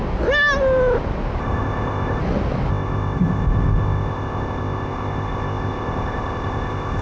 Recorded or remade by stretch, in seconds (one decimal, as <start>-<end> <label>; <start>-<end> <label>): 0.0-1.4 recorded; 1.4-2.2 remade; 2.2-2.7 recorded; 2.7-7.0 remade